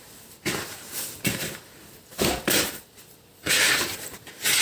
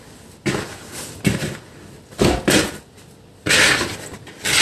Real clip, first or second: second